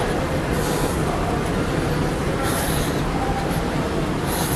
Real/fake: real